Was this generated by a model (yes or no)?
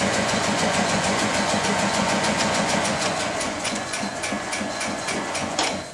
yes